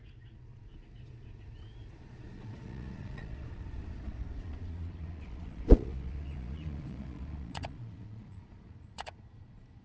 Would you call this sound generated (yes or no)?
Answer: yes